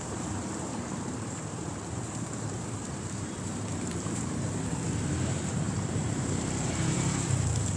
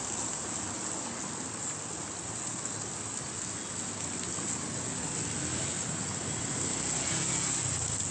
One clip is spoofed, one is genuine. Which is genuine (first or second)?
second